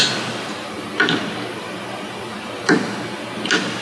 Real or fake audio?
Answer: real